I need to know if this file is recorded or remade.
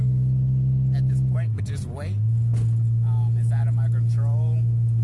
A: recorded